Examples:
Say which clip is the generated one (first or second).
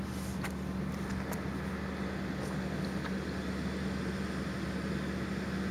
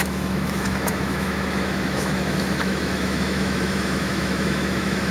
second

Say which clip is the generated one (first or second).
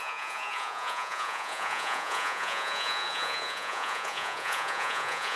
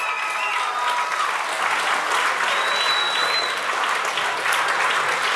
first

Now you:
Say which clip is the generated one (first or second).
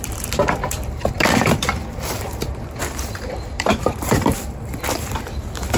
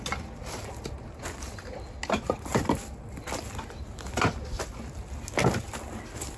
first